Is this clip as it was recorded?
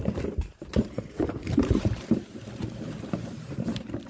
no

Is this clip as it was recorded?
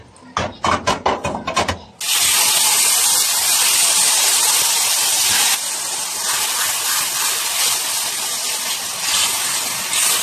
yes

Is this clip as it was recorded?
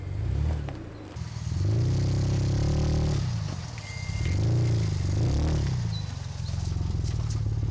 yes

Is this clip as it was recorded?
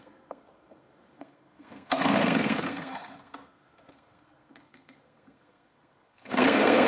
no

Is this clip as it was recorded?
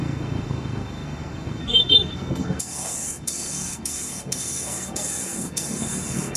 no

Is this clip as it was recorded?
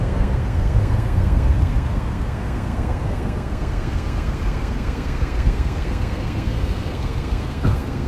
no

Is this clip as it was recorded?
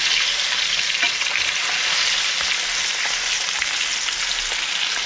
yes